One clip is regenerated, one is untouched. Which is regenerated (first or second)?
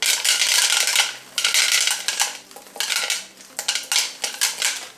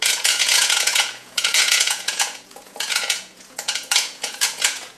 second